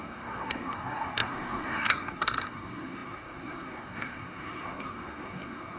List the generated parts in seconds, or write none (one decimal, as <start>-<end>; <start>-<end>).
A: 0.0-5.8